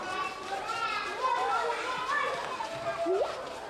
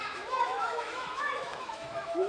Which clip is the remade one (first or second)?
second